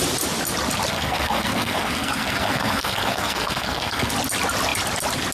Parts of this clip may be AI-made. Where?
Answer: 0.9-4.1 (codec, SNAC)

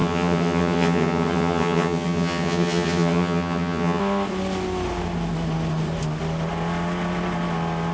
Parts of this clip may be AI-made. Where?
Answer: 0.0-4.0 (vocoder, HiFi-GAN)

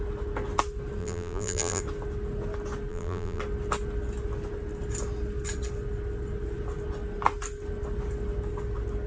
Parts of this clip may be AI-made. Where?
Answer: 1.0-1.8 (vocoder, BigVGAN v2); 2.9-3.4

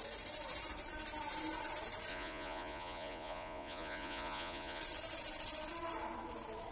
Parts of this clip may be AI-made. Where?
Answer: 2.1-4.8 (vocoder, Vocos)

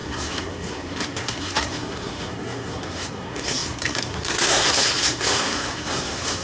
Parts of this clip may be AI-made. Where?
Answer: 0.0-6.4 (codec, SNAC)